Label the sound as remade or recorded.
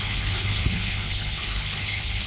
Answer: remade